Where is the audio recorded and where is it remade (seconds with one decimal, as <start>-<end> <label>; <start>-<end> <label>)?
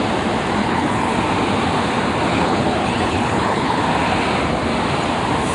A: 0.0-0.6 recorded; 0.6-1.1 remade; 1.1-2.3 recorded; 2.3-3.8 remade; 3.8-5.5 recorded